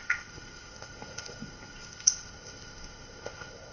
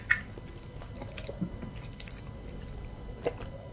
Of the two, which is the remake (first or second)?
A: first